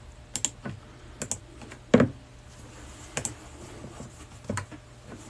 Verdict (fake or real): real